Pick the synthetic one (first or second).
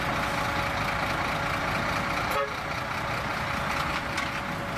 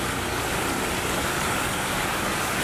second